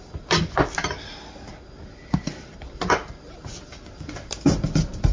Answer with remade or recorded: recorded